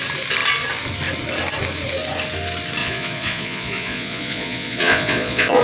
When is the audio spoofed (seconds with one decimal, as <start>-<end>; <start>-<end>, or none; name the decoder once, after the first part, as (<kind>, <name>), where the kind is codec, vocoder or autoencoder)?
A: 2.8-5.6 (vocoder, Vocos)